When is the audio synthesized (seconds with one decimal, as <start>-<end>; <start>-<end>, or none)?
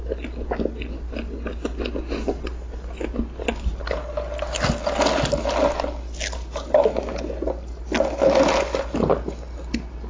none